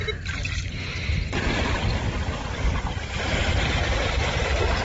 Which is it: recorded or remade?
recorded